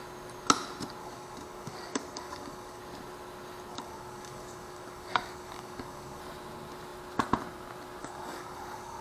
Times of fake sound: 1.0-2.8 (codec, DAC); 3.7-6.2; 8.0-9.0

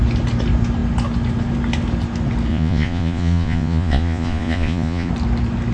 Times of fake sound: 2.5-5.1 (vocoder, Vocos)